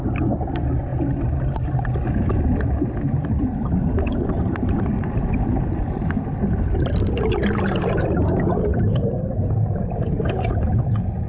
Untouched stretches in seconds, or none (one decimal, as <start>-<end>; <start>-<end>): 0.0-3.8; 4.8-7.4; 10.7-11.3

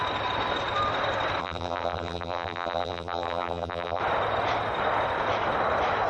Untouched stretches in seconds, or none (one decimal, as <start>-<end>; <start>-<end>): 0.0-1.4; 4.0-6.1

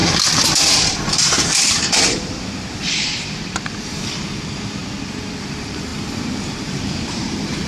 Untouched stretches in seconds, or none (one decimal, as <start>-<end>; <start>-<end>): 4.8-5.4